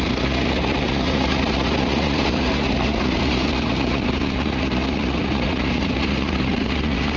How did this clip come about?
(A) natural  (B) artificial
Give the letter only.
B